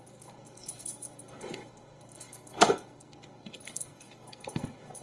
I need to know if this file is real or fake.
fake